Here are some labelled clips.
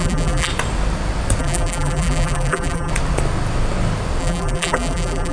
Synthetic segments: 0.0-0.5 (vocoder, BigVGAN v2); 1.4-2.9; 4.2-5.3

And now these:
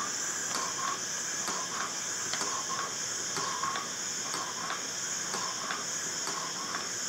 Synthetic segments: none